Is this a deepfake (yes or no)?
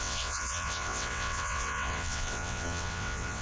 yes